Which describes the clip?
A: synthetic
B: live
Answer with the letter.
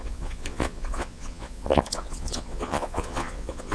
A